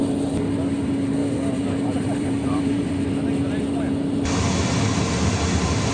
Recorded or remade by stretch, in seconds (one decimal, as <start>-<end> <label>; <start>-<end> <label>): 0.0-1.2 recorded; 1.2-2.9 remade; 2.9-5.9 recorded